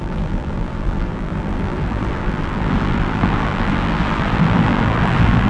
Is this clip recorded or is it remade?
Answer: remade